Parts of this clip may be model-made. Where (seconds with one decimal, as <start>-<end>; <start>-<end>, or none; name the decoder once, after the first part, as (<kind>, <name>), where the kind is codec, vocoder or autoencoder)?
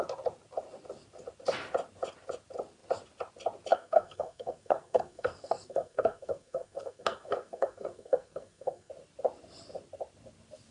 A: 3.7-8.9 (codec, SNAC)